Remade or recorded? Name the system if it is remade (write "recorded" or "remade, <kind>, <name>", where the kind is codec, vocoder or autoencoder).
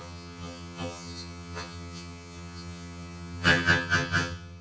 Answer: remade, vocoder, HiFi-GAN